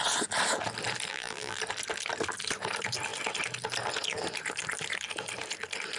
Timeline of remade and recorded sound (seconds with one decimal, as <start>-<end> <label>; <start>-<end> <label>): 0.0-1.1 recorded; 1.1-1.6 remade; 1.6-6.0 recorded